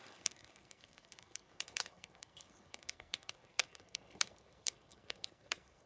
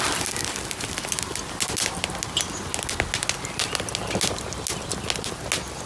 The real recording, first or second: second